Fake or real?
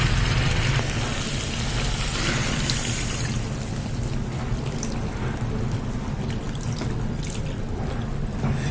real